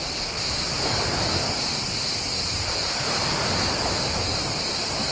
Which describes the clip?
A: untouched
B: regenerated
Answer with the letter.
A